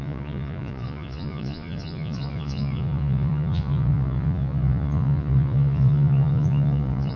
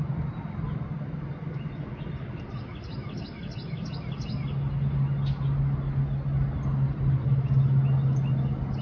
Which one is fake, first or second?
first